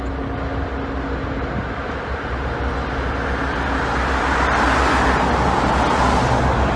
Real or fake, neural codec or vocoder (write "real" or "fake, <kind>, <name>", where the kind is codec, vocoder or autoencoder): real